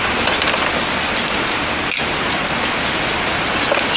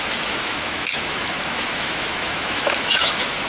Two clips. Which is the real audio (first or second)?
first